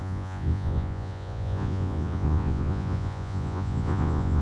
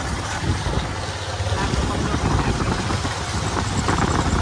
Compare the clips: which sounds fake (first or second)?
first